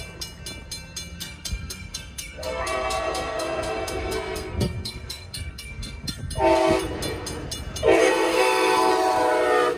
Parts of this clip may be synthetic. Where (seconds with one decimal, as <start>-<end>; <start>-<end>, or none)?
1.2-6.2; 8.0-8.9